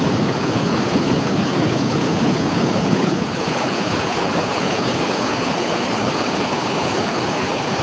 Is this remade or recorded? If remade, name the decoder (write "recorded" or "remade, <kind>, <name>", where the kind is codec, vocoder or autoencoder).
remade, codec, HILCodec